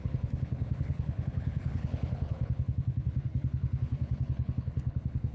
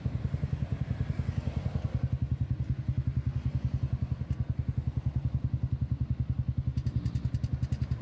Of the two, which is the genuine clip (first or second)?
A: second